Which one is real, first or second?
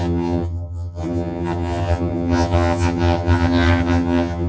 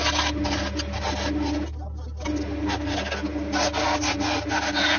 second